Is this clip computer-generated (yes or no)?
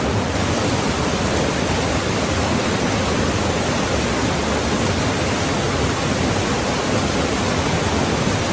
no